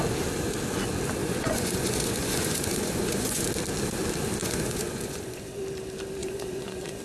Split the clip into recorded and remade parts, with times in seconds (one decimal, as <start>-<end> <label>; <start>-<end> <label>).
0.0-1.2 recorded; 1.2-3.5 remade; 3.5-4.4 recorded; 4.4-5.6 remade; 5.6-6.2 recorded; 6.2-7.0 remade